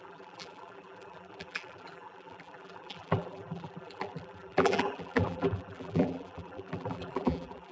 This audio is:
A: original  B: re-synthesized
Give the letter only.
B